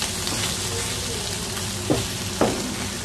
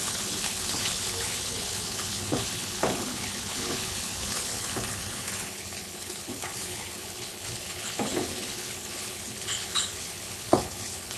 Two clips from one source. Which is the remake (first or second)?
second